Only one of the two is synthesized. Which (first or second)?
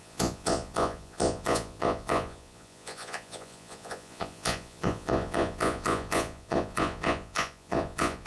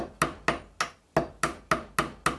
first